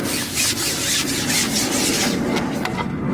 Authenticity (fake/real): real